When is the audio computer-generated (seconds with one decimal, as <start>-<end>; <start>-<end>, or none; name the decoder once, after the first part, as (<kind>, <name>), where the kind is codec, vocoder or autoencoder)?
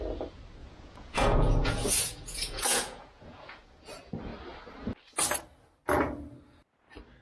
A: 0.6-3.8 (vocoder, Vocos)